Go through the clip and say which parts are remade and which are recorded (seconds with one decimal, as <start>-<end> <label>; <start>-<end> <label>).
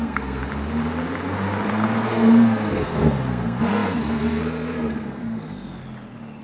0.0-0.4 remade; 0.4-1.7 recorded; 1.7-5.8 remade; 5.8-6.4 recorded